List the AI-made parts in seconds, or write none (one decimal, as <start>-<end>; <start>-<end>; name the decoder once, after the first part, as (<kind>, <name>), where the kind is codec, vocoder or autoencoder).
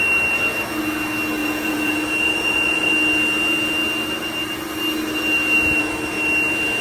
1.4-2.9 (vocoder, Vocos)